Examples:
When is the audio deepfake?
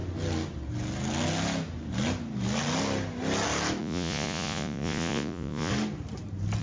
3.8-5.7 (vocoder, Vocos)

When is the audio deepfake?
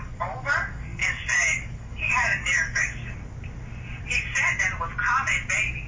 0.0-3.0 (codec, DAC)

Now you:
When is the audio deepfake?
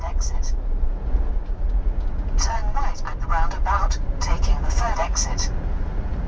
0.0-2.6 (vocoder, Vocos); 3.5-6.3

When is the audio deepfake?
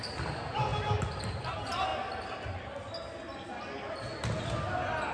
none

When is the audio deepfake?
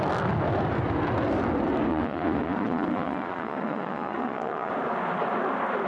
1.9-4.7 (vocoder, Vocos)